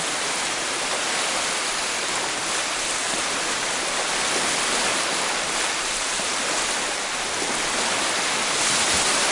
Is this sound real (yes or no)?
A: yes